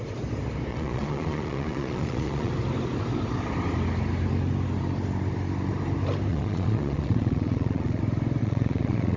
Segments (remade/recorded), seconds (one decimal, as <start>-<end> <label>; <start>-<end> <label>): 0.0-0.7 recorded; 0.7-2.5 remade; 2.5-6.3 recorded; 6.3-8.0 remade; 8.0-8.4 recorded; 8.4-9.2 remade